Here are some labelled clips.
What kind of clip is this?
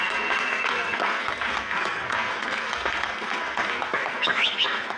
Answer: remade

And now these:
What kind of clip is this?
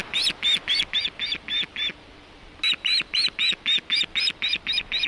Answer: recorded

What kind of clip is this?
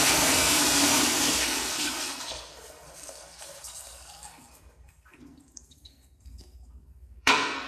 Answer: remade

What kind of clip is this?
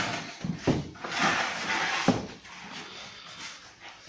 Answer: recorded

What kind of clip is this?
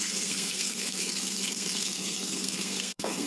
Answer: remade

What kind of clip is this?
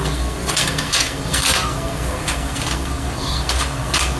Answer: remade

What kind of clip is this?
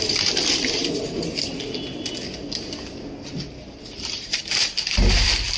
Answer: recorded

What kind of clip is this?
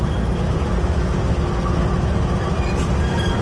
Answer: recorded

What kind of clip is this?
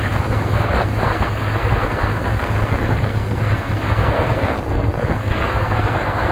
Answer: remade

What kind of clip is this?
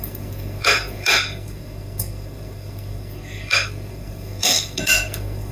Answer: remade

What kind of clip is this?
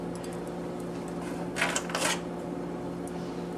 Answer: recorded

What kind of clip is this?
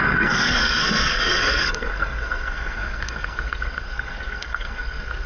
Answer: remade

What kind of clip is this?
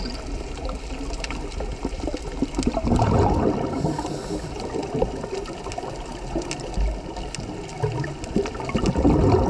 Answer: recorded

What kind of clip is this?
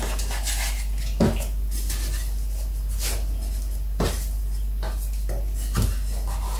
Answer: recorded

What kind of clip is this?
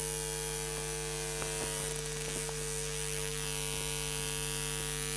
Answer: recorded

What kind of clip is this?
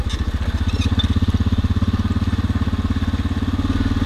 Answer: recorded